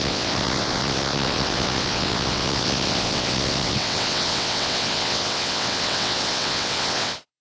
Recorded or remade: remade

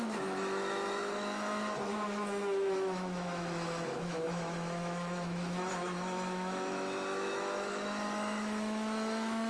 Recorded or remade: remade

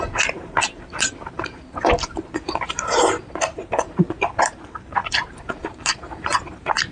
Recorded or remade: remade